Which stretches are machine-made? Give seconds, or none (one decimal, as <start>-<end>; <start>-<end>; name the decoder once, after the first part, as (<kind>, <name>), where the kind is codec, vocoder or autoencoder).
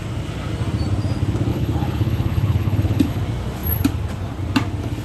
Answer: 1.5-3.2 (codec, HILCodec)